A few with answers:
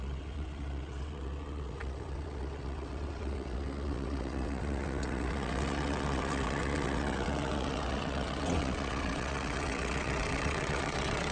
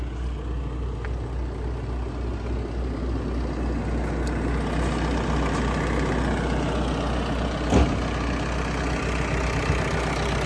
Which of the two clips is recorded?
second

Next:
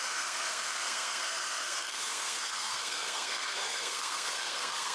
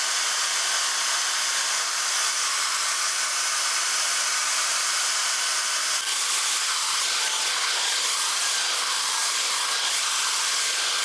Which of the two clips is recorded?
second